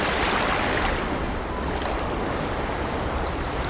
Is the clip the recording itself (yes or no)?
yes